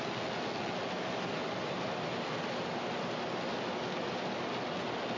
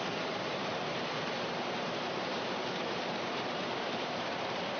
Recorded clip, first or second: first